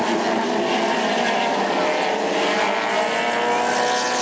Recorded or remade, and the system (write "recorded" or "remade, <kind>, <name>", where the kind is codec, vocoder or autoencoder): recorded